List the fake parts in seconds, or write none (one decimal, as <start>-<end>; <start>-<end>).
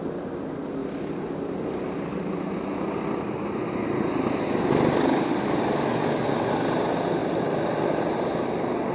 none